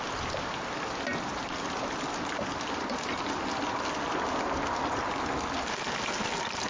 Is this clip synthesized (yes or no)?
no